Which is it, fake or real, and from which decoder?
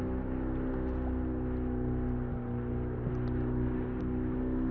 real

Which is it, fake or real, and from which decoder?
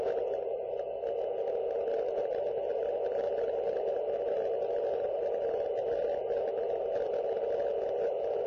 real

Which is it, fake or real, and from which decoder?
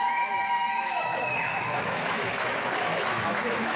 fake, autoencoder, DAC-VAE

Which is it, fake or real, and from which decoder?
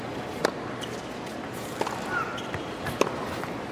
real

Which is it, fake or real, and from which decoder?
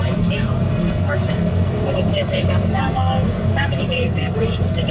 fake, codec, SNAC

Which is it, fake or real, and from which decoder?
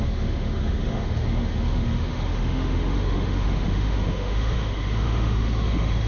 fake, autoencoder, DAC-VAE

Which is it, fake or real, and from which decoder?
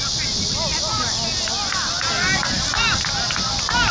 real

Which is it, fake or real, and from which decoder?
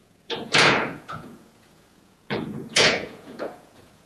fake, vocoder, Vocos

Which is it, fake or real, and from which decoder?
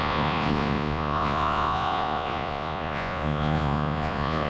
fake, vocoder, Vocos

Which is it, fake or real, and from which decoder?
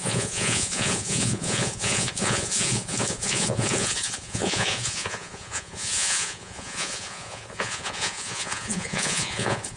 fake, vocoder, Vocos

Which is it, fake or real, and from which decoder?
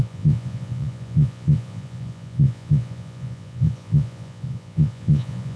fake, vocoder, Vocos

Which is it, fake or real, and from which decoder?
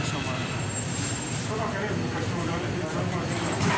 fake, vocoder, BigVGAN v2